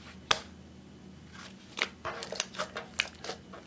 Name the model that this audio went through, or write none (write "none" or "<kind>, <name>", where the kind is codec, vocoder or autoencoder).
none